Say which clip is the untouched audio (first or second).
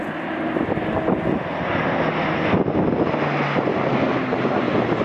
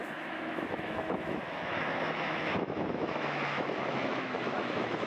first